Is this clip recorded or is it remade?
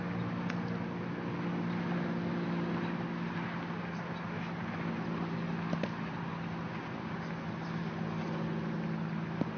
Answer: recorded